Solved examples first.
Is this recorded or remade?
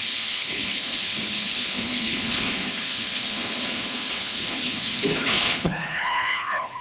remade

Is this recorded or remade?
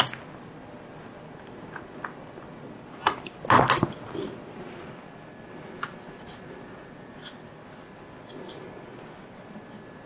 recorded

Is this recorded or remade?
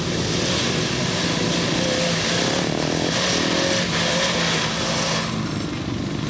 recorded